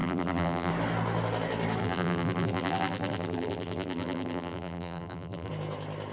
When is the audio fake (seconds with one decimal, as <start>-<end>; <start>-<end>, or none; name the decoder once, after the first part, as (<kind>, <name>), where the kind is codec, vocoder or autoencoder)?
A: 0.0-0.7 (vocoder, BigVGAN v2); 1.8-5.5